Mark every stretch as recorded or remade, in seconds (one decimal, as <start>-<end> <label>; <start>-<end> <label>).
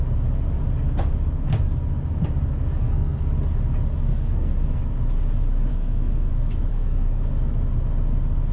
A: 0.0-2.8 recorded; 2.8-3.3 remade; 3.3-4.1 recorded; 4.1-4.8 remade; 4.8-5.7 recorded; 5.7-6.3 remade; 6.3-6.7 recorded; 6.7-7.3 remade; 7.3-8.5 recorded